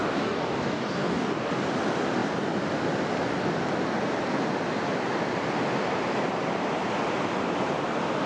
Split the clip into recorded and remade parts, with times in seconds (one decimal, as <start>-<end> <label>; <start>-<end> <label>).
0.0-1.5 remade; 1.5-8.3 recorded